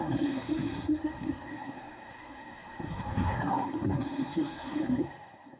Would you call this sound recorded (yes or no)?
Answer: no